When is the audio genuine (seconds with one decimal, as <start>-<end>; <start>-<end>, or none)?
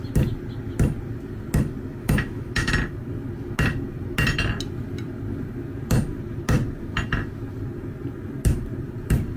0.0-2.0; 2.7-9.4